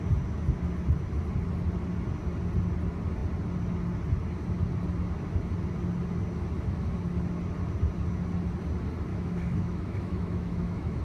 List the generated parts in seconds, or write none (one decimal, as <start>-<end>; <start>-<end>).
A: 9.1-11.0